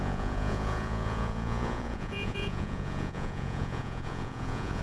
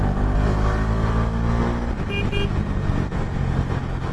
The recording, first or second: second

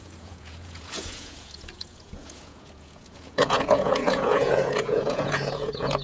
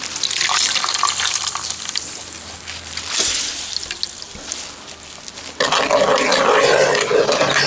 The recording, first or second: second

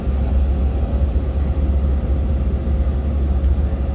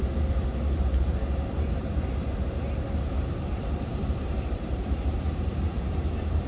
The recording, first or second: first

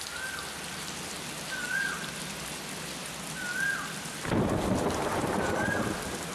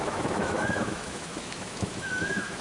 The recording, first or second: first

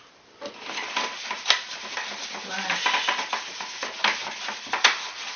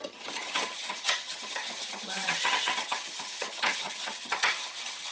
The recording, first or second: first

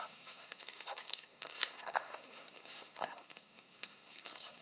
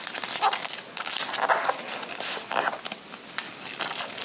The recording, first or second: second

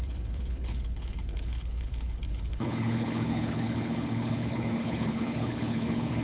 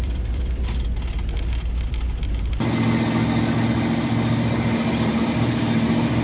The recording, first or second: second